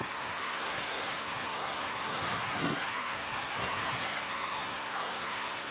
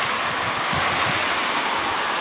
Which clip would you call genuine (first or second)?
second